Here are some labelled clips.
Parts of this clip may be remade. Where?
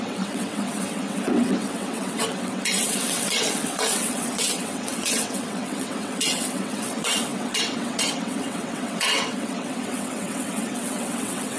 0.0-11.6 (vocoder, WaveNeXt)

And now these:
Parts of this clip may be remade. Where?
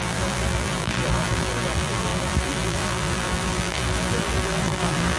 0.0-5.2 (vocoder, BigVGAN v2)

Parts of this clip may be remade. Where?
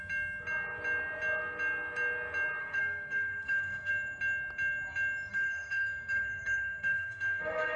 2.6-3.9 (codec, SNAC); 5.3-7.8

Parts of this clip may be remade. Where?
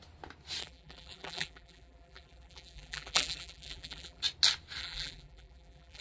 0.6-4.2 (vocoder, BigVGAN v2); 4.8-6.0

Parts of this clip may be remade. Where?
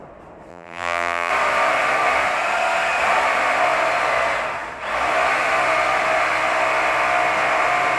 0.5-1.3 (vocoder, BigVGAN v2)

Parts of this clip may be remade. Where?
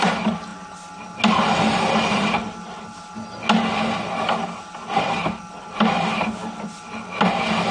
none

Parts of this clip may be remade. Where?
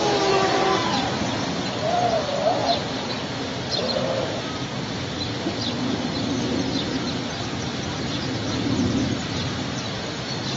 2.6-3.1 (vocoder, Vocos)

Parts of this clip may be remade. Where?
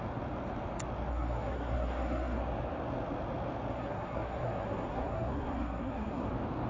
1.1-2.4 (codec, SNAC); 3.7-6.3